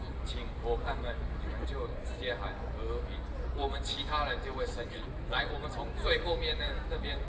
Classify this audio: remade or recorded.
recorded